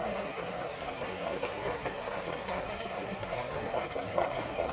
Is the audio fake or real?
fake